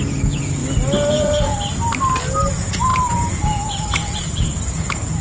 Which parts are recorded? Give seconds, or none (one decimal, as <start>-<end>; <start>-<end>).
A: 0.6-1.1; 1.5-2.5